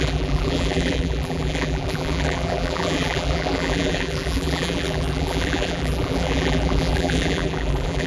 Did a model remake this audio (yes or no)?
yes